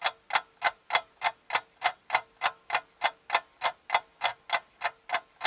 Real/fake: real